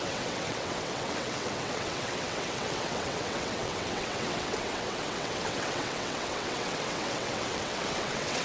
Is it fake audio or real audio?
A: fake